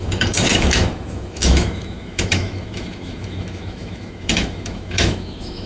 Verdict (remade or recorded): remade